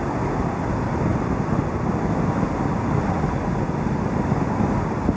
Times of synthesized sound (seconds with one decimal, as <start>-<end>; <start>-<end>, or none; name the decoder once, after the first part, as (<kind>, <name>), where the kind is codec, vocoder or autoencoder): none